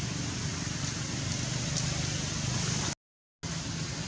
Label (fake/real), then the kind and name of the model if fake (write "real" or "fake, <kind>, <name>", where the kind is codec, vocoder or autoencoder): real